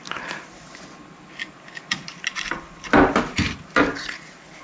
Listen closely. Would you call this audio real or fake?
real